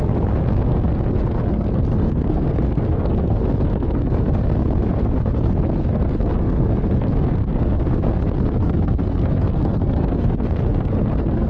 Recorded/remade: remade